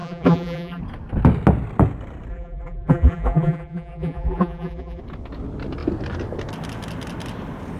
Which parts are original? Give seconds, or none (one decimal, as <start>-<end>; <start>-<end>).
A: 0.8-2.3; 5.0-7.8

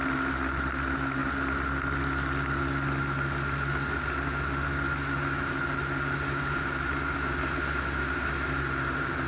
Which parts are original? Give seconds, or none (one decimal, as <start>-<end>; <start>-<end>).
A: 0.0-9.3

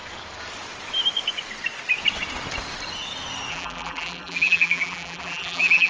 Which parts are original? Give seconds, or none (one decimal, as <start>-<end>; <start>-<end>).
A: 0.0-3.5

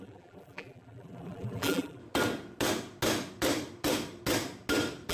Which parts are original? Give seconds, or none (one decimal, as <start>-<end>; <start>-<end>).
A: 2.0-5.1

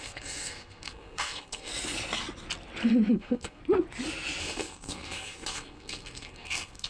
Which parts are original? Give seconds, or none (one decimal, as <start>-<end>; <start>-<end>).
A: 1.7-3.1; 3.6-4.4

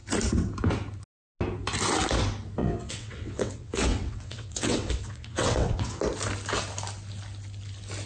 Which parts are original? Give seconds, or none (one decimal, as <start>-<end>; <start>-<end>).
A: 0.0-2.6; 6.0-8.1

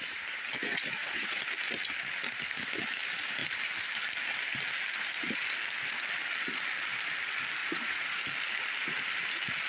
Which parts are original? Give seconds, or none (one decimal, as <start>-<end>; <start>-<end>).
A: 0.0-0.6; 1.4-7.6; 8.2-9.7